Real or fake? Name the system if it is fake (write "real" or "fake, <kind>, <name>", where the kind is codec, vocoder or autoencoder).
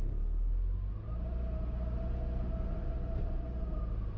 real